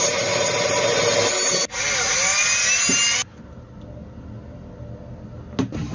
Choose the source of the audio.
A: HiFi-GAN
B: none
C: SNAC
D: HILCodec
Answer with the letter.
B